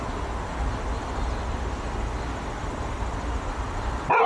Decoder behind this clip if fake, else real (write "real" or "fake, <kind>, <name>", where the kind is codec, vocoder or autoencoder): real